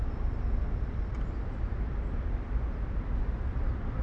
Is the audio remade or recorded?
recorded